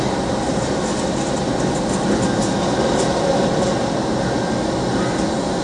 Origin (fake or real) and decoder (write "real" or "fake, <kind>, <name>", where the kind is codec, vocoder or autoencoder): real